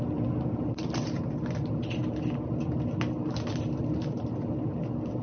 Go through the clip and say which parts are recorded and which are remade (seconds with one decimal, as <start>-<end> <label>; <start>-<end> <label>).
0.0-5.2 recorded